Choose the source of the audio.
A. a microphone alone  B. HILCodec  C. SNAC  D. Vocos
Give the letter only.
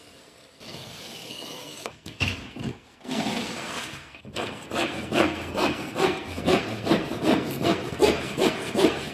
C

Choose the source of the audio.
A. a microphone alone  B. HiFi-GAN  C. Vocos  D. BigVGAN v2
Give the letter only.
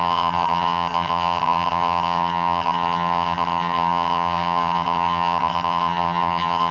B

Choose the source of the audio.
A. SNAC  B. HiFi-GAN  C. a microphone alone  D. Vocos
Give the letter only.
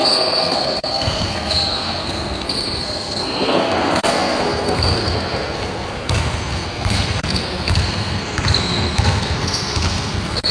A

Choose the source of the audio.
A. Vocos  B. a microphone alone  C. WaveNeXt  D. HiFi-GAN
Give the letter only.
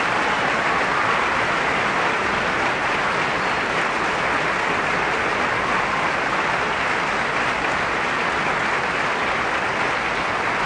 B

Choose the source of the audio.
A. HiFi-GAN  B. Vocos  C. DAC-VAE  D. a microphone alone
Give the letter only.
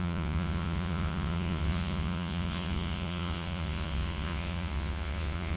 B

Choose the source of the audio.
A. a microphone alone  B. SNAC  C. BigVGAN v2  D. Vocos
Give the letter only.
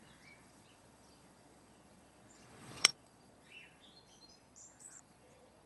D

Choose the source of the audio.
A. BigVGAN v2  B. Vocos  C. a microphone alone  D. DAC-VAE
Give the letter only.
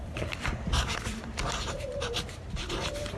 A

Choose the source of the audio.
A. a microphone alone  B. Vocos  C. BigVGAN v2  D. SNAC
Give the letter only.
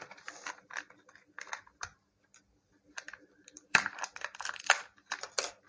C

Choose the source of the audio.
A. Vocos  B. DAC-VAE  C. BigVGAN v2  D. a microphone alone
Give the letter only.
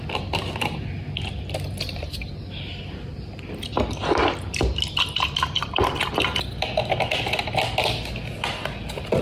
D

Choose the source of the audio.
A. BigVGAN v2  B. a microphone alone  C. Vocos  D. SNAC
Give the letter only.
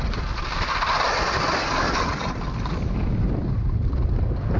B